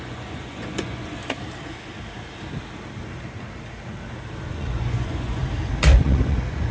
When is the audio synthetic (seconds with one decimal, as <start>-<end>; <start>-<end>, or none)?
0.0-1.2; 4.5-5.4; 6.0-6.7